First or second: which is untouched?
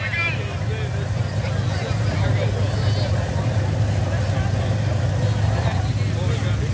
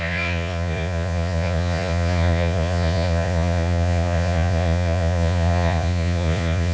first